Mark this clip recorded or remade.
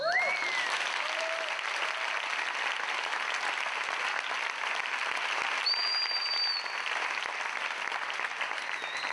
recorded